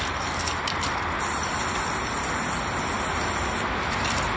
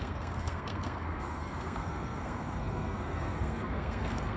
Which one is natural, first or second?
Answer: first